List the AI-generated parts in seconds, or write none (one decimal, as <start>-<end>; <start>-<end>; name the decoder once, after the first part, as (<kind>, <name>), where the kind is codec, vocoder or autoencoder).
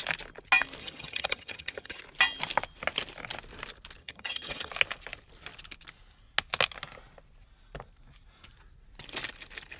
0.8-2.0 (vocoder, HiFi-GAN); 4.0-4.7